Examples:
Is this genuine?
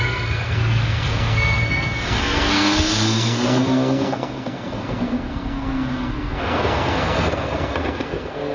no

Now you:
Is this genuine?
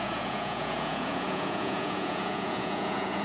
no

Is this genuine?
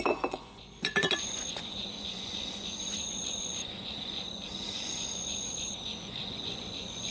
no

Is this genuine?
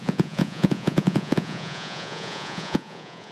no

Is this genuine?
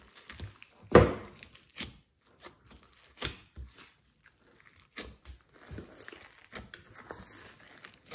yes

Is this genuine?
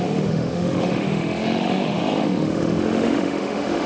no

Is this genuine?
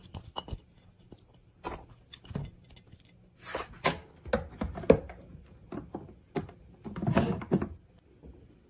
yes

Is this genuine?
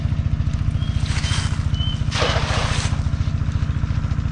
yes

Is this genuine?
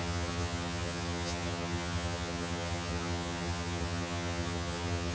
no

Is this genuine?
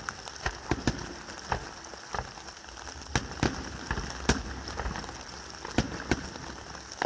yes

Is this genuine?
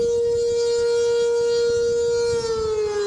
yes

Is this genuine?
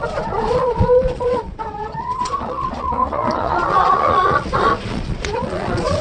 no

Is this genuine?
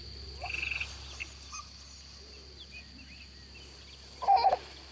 yes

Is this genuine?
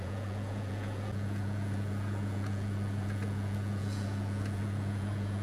no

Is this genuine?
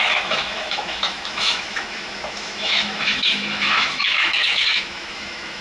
no